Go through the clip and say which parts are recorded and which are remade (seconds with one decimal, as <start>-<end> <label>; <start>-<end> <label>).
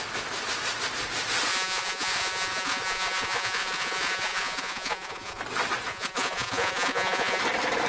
0.0-1.5 recorded; 1.5-5.4 remade; 5.4-5.9 recorded; 5.9-7.4 remade; 7.4-7.9 recorded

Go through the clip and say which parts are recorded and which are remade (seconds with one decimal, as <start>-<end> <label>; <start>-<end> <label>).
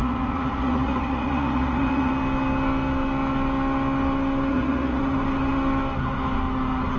0.0-2.1 remade; 2.1-4.5 recorded; 4.5-5.0 remade; 5.0-7.0 recorded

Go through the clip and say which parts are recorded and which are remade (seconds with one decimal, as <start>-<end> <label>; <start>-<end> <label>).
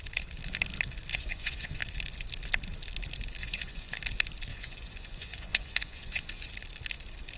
0.0-1.1 recorded; 1.1-1.8 remade; 1.8-3.4 recorded; 3.4-4.0 remade; 4.0-4.5 recorded; 4.5-6.5 remade; 6.5-7.4 recorded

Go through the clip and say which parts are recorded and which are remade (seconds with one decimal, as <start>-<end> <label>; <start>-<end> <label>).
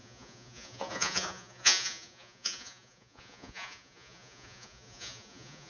0.0-5.7 remade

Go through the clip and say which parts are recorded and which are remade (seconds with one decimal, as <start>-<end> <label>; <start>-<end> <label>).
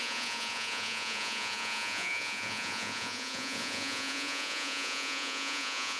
0.0-6.0 remade